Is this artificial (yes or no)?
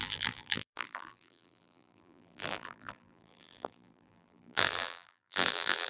yes